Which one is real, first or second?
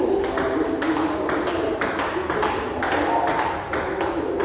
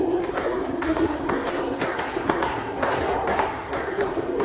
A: first